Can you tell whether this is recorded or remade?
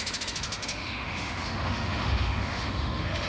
remade